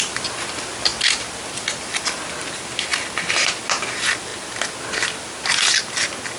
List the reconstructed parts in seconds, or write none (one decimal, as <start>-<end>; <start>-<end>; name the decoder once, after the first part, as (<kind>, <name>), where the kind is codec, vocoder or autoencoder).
none